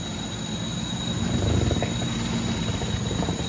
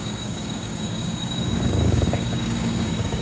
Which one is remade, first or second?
second